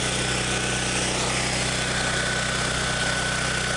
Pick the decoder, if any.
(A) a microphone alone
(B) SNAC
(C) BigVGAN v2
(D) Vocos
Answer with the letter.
A